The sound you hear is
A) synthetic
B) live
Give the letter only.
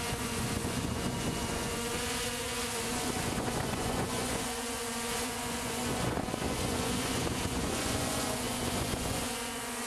A